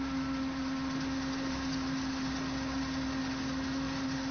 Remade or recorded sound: recorded